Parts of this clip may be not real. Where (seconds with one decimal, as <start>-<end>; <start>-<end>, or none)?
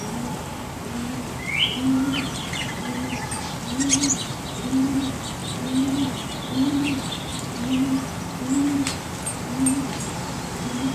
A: none